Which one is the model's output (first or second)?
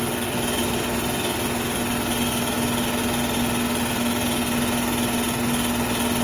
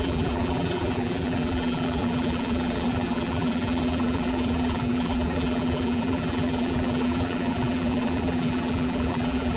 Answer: second